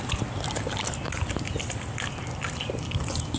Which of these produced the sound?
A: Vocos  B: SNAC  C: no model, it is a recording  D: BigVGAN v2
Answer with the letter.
C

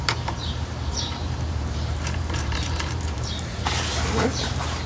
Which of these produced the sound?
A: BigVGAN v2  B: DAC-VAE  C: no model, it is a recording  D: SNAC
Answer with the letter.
A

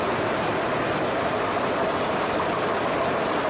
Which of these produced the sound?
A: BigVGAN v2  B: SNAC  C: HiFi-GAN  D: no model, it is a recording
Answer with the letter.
A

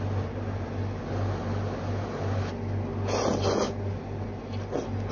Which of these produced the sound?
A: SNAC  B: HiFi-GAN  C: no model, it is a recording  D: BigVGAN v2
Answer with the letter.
C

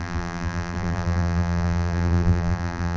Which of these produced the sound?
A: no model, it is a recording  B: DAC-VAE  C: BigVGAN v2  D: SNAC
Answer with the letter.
C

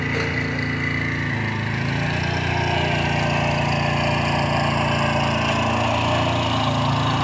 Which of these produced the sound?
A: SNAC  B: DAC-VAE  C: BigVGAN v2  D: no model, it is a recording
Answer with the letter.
D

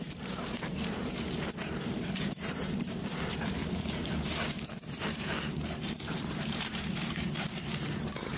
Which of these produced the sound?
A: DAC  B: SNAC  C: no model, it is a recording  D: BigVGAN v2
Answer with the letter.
D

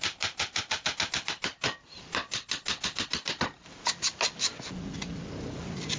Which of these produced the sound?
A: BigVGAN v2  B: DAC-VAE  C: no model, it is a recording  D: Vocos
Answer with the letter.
C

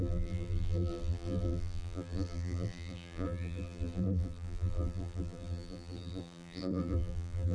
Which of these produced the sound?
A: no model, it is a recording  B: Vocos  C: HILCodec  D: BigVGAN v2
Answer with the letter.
D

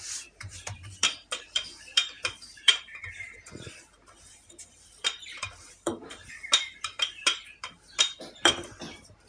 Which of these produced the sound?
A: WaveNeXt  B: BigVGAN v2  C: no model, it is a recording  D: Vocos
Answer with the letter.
B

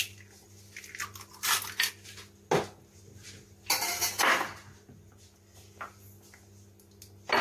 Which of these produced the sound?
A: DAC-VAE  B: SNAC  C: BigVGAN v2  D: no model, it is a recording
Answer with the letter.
D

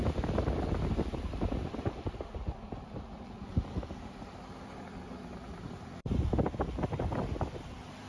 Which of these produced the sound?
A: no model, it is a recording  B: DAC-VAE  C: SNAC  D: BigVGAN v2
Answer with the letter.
A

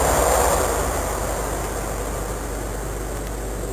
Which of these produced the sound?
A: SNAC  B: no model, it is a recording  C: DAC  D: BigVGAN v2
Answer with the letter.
B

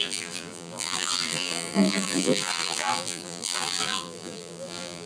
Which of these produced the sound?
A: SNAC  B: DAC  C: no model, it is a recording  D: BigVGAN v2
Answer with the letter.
D